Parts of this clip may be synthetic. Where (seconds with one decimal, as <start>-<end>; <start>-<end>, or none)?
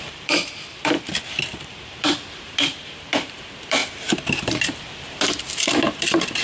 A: 0.0-6.4